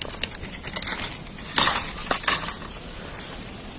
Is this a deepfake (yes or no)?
no